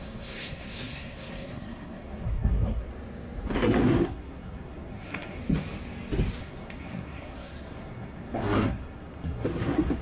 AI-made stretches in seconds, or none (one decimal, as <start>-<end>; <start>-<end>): 0.0-2.9; 3.5-5.4; 6.4-10.0